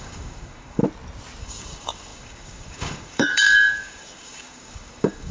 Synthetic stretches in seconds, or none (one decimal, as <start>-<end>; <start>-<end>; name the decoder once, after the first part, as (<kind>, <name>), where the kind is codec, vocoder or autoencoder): 0.0-0.8 (codec, DAC); 1.4-5.3